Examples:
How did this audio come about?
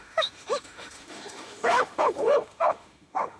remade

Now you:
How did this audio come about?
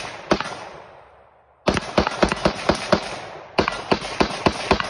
recorded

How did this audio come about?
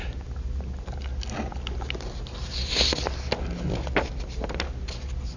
recorded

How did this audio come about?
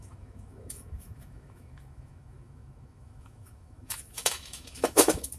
remade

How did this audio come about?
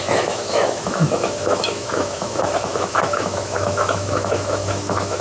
remade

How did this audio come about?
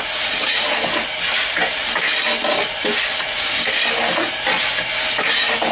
recorded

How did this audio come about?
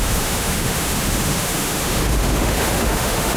remade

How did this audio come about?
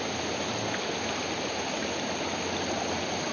recorded